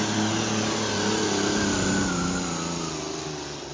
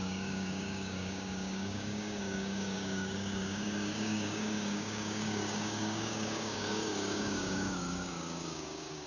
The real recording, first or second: first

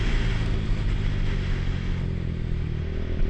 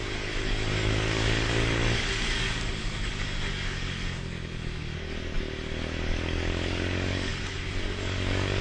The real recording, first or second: first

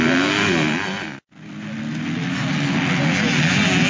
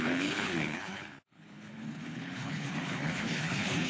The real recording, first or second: first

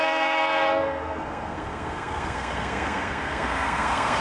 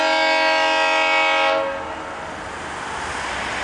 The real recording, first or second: second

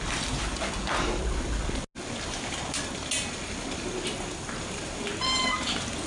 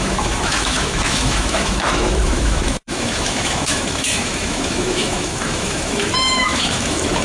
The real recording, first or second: first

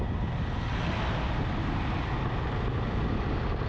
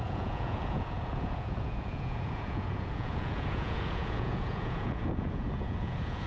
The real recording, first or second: first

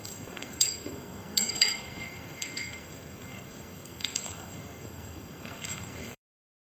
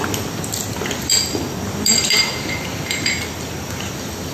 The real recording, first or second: second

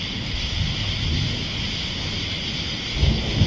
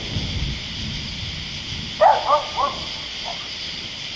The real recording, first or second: first